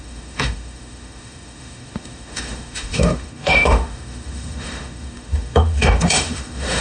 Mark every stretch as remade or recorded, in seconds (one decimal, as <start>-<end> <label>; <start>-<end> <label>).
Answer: 0.0-6.8 remade